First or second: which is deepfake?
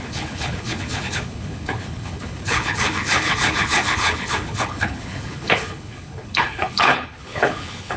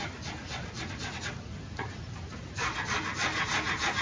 first